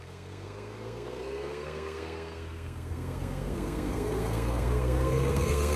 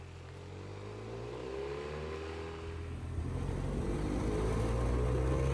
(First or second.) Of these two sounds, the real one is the second